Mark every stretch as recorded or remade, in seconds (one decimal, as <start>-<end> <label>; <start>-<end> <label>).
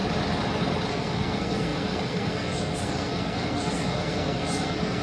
0.0-0.9 recorded; 0.9-5.0 remade